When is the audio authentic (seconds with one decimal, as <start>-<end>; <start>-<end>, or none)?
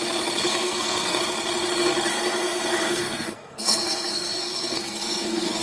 0.0-0.5; 1.2-2.1